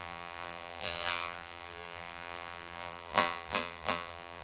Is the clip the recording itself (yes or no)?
no